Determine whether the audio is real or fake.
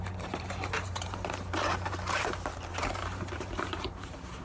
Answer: fake